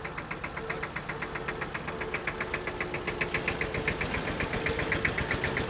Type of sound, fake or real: real